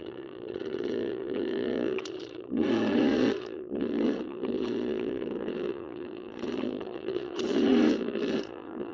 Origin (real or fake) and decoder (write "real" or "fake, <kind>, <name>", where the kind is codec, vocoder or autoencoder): fake, vocoder, Vocos